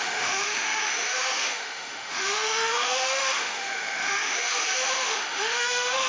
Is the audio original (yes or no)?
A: no